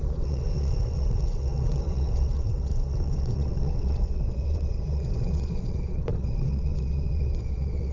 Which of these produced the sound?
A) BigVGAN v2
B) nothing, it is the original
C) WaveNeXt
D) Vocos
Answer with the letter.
C